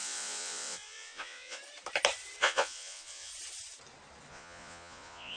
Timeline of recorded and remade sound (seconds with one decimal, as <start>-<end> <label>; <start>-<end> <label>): 0.0-1.6 remade; 1.6-2.4 recorded; 2.4-3.3 remade; 3.3-4.3 recorded; 4.3-5.4 remade